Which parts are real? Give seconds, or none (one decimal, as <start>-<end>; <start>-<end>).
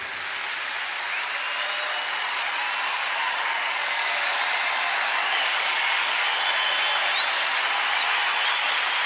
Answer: 0.0-2.9; 4.4-5.2; 6.4-9.1